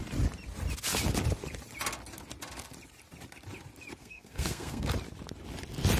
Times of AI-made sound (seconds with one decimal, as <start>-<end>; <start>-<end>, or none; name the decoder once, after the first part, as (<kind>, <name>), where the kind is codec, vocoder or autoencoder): 4.0-4.9 (codec, SNAC)